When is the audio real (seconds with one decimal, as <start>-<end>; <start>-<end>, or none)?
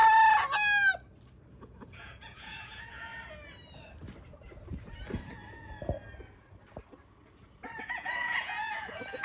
0.0-1.5; 3.1-7.8